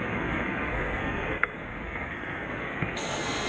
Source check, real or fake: fake